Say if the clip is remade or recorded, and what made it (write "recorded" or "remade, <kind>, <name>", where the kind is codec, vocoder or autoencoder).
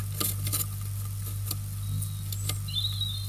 recorded